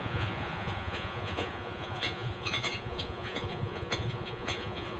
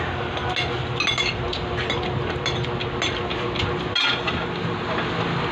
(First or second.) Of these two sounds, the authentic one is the second